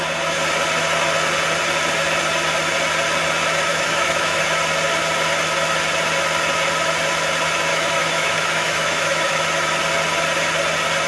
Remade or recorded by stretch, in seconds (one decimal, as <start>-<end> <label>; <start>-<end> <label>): 0.0-3.7 recorded; 3.7-4.4 remade; 4.4-7.7 recorded; 7.7-9.4 remade; 9.4-11.1 recorded